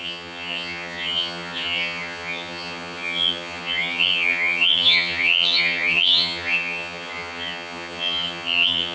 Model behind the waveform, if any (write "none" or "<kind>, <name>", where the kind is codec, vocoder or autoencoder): vocoder, HiFi-GAN